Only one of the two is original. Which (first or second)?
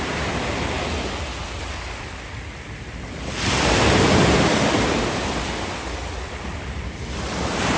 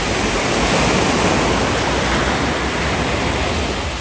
second